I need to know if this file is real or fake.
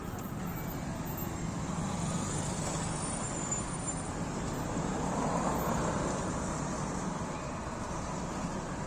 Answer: real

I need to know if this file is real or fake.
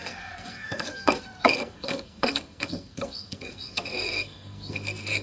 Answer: fake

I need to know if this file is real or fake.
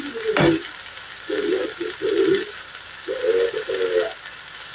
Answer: real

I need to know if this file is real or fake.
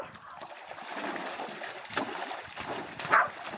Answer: real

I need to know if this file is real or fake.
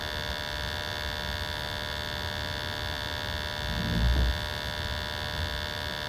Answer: real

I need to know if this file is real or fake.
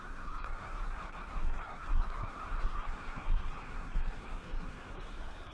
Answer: fake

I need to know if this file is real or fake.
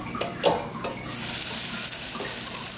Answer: real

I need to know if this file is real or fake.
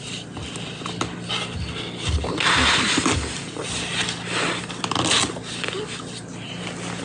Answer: real